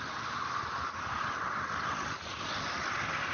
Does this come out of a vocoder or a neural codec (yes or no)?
no